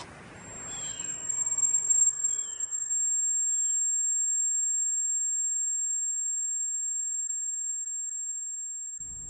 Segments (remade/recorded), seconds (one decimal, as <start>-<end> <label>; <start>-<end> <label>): 0.0-0.9 recorded; 0.9-2.9 remade; 2.9-9.3 recorded